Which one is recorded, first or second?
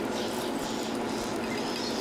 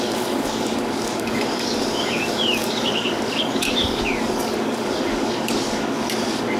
first